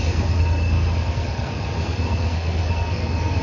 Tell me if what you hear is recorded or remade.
remade